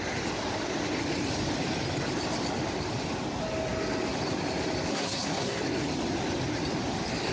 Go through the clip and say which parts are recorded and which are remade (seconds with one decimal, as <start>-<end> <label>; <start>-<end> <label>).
0.0-4.9 recorded; 4.9-5.6 remade; 5.6-7.3 recorded